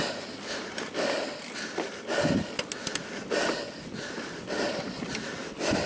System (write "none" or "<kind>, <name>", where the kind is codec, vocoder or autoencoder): none